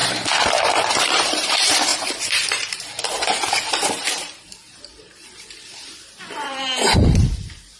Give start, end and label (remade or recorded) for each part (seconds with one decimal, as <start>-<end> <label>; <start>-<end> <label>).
0.0-1.1 recorded; 1.1-7.8 remade